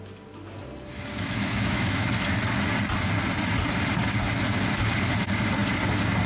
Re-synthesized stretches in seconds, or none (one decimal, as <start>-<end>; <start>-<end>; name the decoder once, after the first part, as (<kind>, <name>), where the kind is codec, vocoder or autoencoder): 0.9-2.1 (autoencoder, DAC-VAE)